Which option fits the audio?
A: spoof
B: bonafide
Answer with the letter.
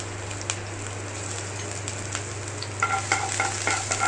B